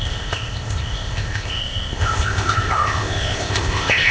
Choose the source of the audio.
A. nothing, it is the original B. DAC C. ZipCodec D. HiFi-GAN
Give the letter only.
C